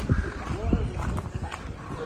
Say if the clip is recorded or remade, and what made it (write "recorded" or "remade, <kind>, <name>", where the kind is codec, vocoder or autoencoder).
recorded